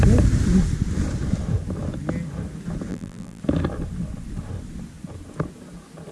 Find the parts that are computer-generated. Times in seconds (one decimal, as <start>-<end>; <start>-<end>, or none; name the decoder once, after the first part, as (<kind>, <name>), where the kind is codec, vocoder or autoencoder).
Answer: 2.9-3.4 (vocoder, BigVGAN v2)